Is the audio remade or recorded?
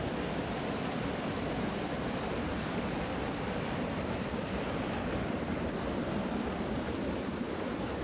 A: remade